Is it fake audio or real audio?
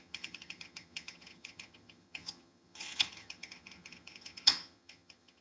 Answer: fake